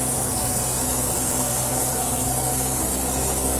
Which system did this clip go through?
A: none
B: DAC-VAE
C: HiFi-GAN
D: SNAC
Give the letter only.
D